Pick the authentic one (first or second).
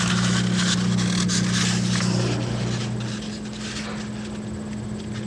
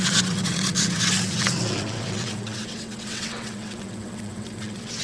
first